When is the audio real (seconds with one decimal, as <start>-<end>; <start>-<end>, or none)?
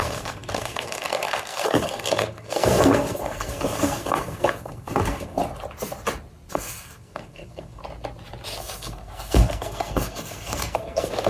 5.4-6.5; 7.8-8.6